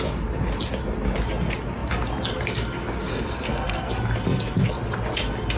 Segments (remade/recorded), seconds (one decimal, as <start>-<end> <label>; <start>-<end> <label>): 0.0-3.1 recorded; 3.1-3.9 remade; 3.9-5.6 recorded

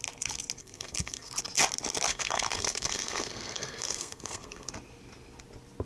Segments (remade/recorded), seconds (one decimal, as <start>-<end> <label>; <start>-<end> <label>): 0.0-0.6 recorded; 0.6-1.3 remade; 1.3-2.1 recorded; 2.1-4.7 remade; 4.7-5.8 recorded

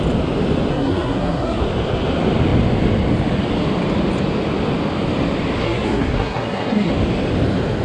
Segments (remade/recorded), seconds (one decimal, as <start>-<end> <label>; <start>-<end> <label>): 0.0-0.7 recorded; 0.7-1.6 remade; 1.6-5.6 recorded; 5.6-6.9 remade; 6.9-7.8 recorded

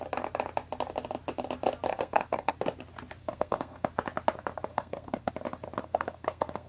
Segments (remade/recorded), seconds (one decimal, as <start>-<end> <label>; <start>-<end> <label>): 0.0-1.9 recorded; 1.9-2.5 remade; 2.5-3.2 recorded; 3.2-3.9 remade; 3.9-4.7 recorded; 4.7-5.3 remade; 5.3-5.8 recorded; 5.8-6.7 remade

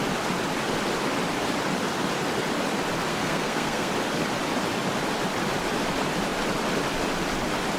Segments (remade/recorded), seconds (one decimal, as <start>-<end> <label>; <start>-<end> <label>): 0.0-3.1 recorded; 3.1-3.9 remade; 3.9-7.8 recorded